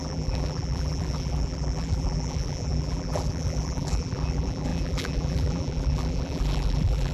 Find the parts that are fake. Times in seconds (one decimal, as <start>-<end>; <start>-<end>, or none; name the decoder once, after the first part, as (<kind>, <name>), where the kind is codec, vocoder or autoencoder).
0.0-7.1 (vocoder, BigVGAN v2)